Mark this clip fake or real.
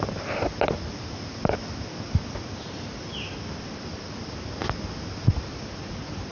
real